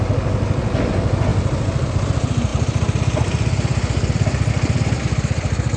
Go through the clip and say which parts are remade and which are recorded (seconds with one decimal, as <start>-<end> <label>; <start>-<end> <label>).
0.0-5.8 recorded